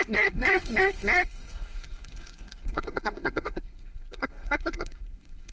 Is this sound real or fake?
fake